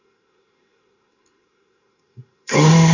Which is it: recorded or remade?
remade